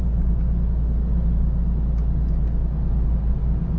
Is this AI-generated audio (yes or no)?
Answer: no